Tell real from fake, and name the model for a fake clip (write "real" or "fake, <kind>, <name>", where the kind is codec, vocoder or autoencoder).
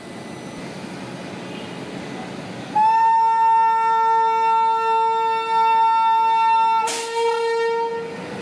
real